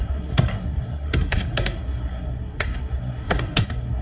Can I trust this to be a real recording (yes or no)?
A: no